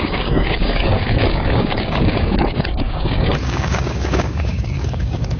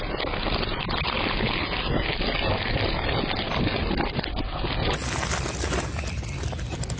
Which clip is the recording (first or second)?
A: second